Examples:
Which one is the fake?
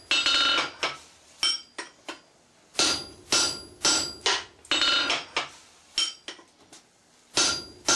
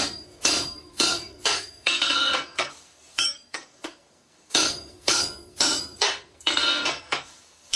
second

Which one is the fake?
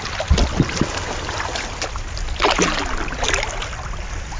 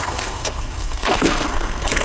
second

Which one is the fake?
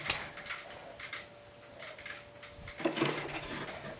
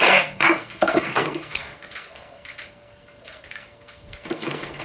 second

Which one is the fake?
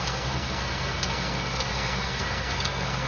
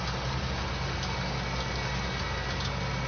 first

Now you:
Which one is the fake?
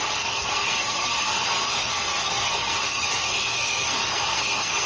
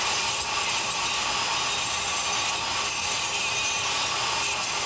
first